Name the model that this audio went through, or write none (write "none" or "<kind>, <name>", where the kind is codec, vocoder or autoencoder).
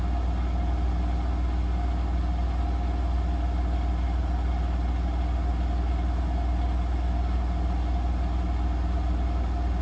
none